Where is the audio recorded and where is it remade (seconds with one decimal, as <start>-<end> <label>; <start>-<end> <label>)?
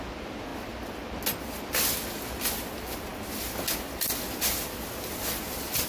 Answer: 0.0-5.9 recorded